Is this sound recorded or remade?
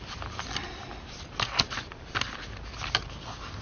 recorded